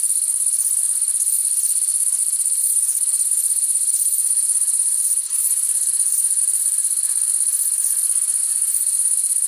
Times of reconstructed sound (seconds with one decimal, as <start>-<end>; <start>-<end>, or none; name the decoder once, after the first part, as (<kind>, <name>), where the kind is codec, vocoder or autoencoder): 2.2-6.4 (vocoder, BigVGAN v2); 8.4-9.5